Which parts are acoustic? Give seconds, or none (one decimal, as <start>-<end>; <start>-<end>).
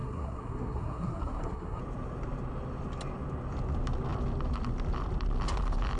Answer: 1.8-6.0